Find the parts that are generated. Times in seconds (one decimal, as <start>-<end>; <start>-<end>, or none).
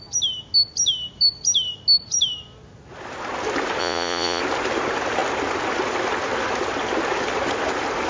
3.8-4.4